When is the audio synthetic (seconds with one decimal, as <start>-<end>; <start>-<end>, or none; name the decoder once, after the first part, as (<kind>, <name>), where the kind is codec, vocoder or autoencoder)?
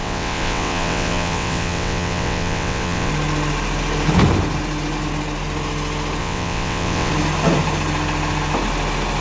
0.0-3.1 (vocoder, WaveNeXt); 6.2-7.1